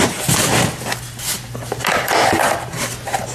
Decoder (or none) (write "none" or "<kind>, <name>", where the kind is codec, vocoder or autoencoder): none